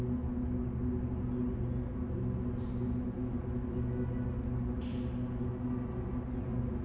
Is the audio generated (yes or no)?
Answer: no